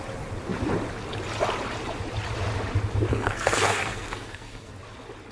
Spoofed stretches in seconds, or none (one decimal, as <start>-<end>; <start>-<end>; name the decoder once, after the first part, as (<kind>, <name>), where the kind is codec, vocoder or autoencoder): 3.1-4.7 (codec, SNAC)